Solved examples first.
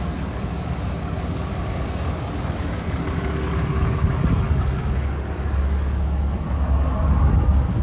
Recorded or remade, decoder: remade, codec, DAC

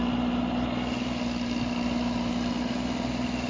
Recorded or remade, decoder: recorded